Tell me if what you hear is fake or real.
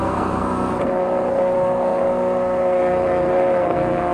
fake